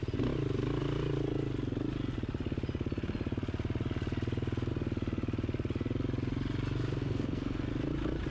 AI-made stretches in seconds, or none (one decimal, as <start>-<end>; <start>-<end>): 7.0-7.7